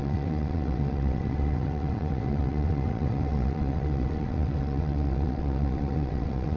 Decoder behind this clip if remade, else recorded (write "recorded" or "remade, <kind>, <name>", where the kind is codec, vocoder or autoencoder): remade, vocoder, WaveNeXt